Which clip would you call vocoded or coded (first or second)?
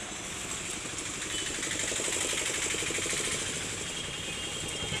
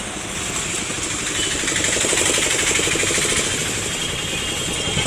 second